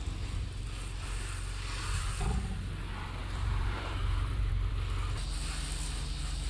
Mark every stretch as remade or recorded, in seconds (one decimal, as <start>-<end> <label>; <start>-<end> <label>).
0.0-3.2 recorded; 3.2-4.7 remade; 4.7-6.5 recorded